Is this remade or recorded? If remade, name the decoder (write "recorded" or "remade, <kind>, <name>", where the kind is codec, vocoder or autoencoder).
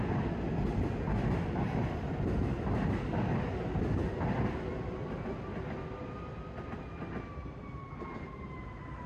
recorded